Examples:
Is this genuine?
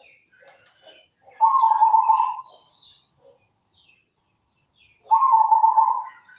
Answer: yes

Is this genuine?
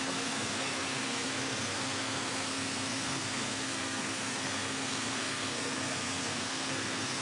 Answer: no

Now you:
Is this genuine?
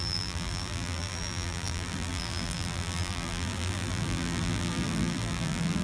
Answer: no